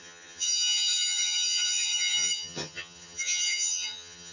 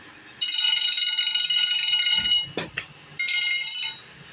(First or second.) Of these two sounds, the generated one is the first